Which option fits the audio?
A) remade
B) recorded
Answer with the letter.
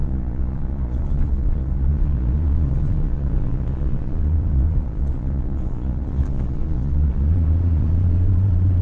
A